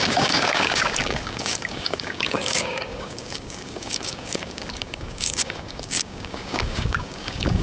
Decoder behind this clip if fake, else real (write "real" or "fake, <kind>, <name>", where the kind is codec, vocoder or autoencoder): fake, codec, DAC